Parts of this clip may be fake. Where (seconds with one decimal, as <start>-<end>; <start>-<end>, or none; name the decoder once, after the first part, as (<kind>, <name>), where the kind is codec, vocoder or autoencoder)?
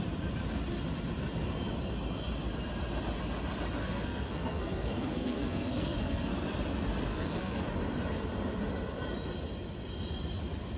3.8-6.3 (codec, SNAC); 7.1-7.6